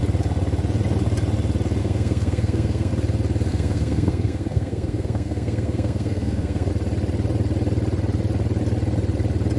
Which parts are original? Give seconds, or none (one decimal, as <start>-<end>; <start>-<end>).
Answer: 0.0-1.8; 2.9-3.5; 6.7-9.6